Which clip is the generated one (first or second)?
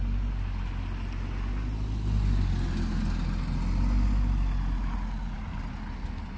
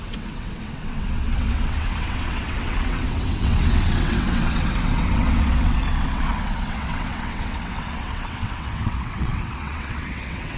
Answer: second